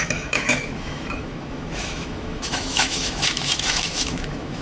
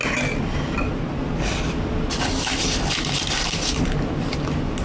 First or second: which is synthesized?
first